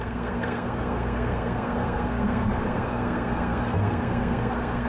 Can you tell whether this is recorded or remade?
remade